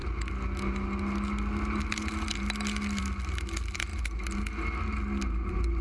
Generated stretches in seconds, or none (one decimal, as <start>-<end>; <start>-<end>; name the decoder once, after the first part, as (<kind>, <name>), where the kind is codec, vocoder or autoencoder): none